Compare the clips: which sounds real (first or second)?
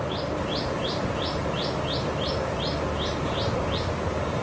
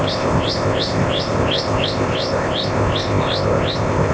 first